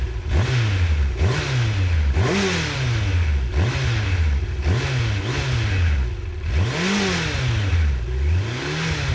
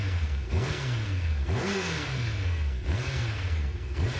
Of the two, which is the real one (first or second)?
first